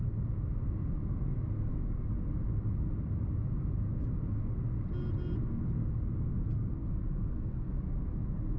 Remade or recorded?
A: recorded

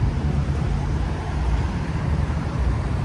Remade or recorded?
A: remade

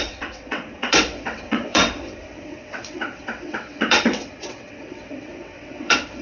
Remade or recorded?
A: remade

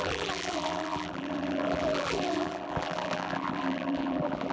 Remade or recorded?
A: remade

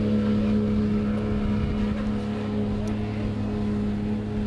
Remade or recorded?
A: recorded